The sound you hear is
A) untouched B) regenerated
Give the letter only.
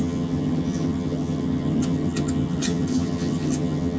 B